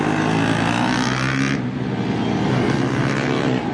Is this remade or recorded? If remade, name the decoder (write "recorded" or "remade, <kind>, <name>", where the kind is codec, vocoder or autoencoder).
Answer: recorded